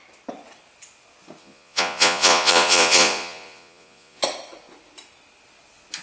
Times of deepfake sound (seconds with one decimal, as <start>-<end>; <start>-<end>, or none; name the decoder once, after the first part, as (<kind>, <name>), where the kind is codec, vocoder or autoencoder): 1.4-4.2 (vocoder, Vocos)